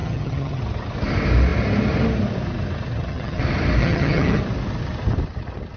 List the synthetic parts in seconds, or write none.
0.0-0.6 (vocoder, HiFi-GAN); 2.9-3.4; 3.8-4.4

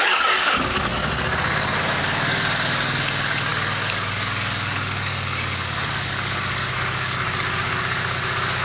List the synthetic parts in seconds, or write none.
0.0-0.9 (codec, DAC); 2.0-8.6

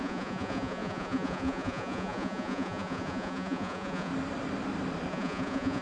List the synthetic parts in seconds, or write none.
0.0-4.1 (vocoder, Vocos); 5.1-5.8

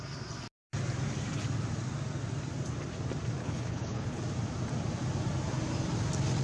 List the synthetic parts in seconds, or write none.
3.4-4.2 (codec, HILCodec)

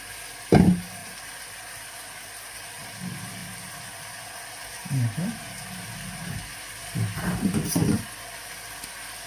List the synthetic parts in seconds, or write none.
none

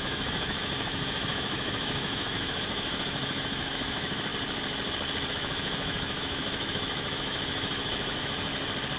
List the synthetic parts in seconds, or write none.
0.0-4.3 (autoencoder, DAC-VAE); 5.3-8.5